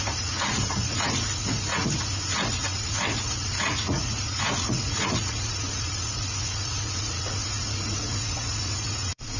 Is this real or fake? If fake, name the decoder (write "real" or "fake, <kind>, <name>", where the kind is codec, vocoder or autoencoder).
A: fake, vocoder, Vocos